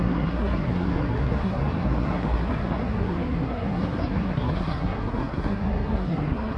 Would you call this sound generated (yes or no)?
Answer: yes